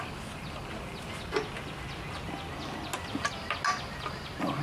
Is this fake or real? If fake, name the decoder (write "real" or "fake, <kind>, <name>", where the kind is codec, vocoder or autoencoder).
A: real